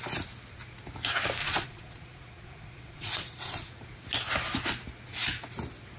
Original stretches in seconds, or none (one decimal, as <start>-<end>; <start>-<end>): 0.0-1.4; 3.7-6.0